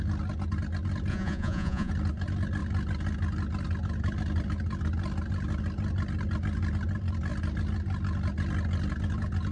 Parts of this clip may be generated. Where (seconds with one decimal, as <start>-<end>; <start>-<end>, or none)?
1.1-1.9